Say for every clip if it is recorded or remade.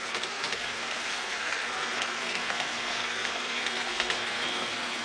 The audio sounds remade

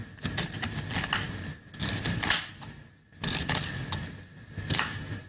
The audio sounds recorded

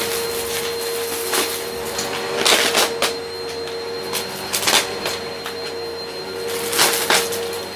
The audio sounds recorded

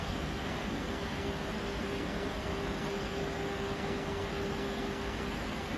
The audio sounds remade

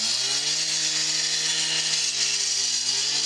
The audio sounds recorded